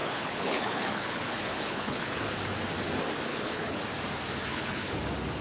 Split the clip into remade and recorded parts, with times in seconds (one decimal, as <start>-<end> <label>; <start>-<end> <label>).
0.0-2.2 remade; 2.2-3.3 recorded; 3.3-3.8 remade; 3.8-4.5 recorded; 4.5-5.0 remade; 5.0-5.4 recorded

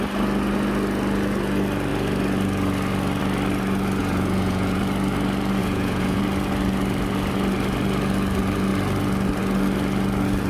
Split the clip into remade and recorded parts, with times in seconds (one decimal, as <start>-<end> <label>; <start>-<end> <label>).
0.0-4.0 recorded; 4.0-4.8 remade; 4.8-5.6 recorded; 5.6-6.2 remade; 6.2-10.5 recorded

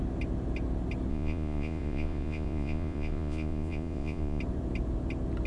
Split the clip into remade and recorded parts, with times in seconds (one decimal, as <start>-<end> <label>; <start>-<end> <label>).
0.0-1.1 recorded; 1.1-4.4 remade; 4.4-5.5 recorded

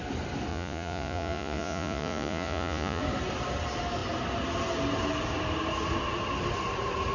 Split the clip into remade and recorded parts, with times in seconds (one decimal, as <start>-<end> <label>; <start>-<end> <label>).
0.0-0.5 recorded; 0.5-3.0 remade; 3.0-7.1 recorded